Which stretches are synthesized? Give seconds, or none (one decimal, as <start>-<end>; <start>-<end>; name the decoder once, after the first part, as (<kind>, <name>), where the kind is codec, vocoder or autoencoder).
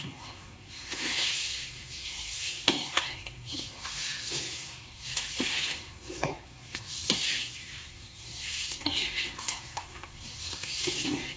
0.0-11.4 (codec, SNAC)